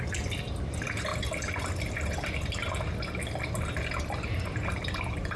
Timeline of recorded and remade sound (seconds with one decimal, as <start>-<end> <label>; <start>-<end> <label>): 0.0-5.4 recorded